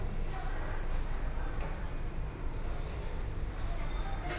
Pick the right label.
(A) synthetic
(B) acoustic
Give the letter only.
B